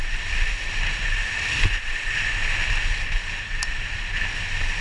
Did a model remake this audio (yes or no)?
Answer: no